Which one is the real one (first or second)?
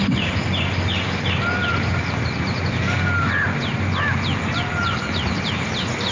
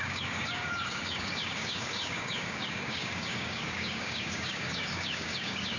first